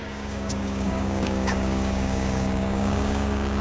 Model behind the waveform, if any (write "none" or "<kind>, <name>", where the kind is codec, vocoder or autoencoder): codec, DAC